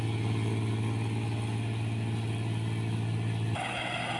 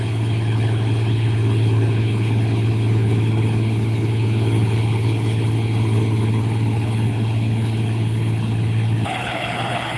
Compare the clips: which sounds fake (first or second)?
second